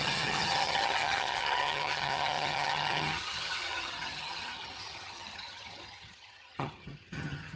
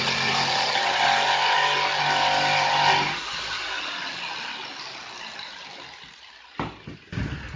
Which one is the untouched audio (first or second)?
second